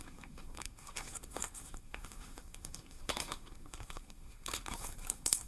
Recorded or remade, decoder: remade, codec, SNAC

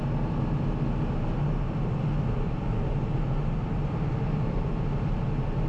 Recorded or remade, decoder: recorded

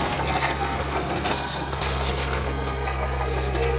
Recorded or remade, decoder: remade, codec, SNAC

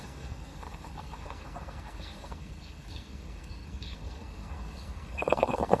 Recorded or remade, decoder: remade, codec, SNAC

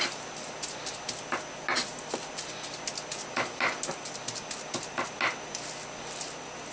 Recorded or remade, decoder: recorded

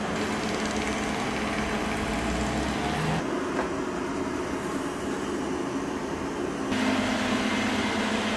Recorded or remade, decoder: recorded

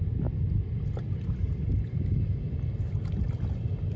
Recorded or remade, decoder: recorded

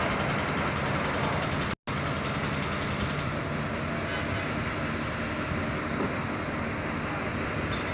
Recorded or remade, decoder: recorded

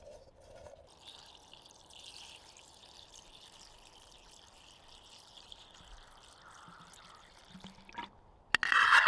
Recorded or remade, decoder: recorded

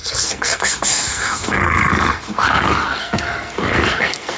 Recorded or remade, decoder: remade, codec, SNAC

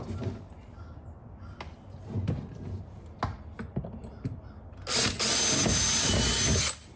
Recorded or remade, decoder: recorded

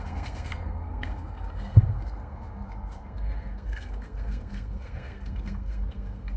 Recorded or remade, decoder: remade, codec, SNAC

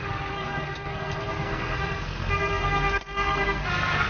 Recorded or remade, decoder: remade, codec, SNAC